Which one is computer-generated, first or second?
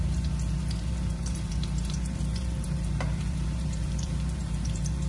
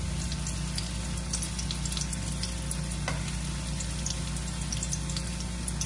first